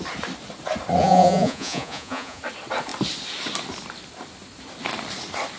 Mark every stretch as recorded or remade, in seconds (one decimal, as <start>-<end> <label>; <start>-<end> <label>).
0.0-1.0 recorded; 1.0-2.4 remade; 2.4-5.6 recorded